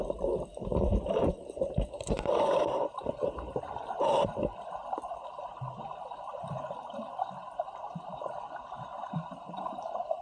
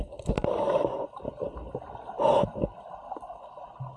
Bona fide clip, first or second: second